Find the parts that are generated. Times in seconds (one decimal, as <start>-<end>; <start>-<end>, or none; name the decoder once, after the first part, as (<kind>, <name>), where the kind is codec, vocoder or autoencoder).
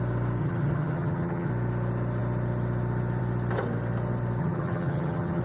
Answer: 0.4-1.5 (vocoder, HiFi-GAN); 4.4-5.4